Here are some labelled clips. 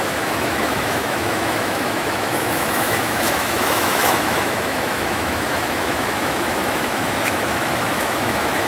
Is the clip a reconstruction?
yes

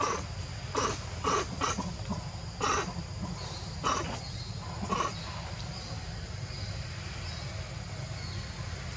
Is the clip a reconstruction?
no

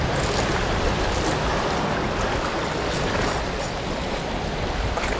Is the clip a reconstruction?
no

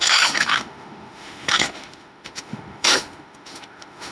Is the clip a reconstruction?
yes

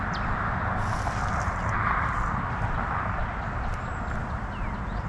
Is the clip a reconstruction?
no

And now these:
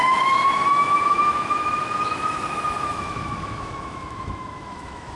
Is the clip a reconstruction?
yes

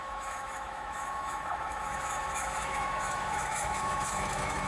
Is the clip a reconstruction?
yes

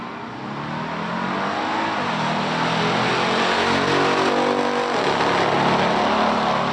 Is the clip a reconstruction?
no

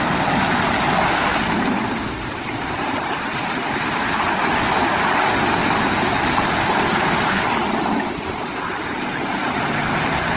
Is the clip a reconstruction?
no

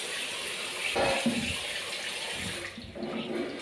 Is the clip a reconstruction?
no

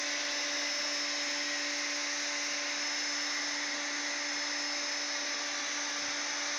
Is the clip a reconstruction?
no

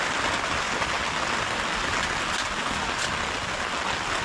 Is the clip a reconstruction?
no